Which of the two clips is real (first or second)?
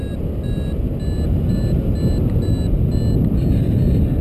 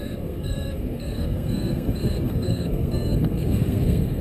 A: first